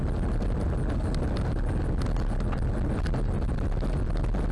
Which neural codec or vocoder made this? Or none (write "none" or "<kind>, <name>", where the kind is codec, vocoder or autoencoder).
none